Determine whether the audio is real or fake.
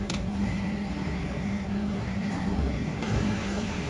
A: fake